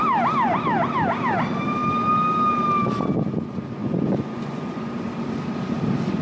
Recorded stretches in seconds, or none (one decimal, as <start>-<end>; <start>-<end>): 0.0-3.8; 4.9-6.2